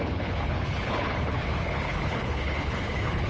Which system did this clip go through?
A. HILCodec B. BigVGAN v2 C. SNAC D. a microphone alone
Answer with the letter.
A